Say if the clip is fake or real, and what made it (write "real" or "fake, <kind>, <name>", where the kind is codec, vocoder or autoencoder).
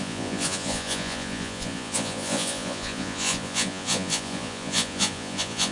fake, vocoder, Vocos